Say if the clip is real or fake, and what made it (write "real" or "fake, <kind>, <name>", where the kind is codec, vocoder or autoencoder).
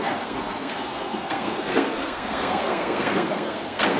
fake, codec, SNAC